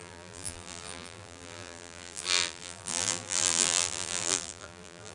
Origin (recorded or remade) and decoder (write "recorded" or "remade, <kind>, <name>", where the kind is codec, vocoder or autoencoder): remade, vocoder, BigVGAN v2